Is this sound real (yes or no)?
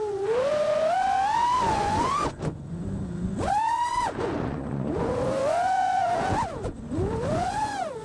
no